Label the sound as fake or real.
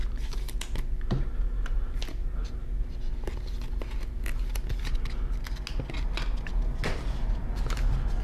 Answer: real